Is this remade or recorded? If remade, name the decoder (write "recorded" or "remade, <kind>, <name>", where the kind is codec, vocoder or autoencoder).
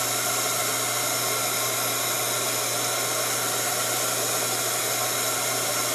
recorded